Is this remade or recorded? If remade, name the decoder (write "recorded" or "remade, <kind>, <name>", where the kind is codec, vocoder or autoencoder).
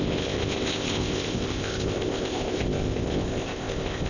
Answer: remade, codec, ZipCodec